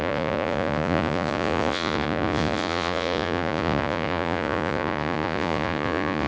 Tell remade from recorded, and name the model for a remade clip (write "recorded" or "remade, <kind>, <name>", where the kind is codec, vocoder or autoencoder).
remade, vocoder, Vocos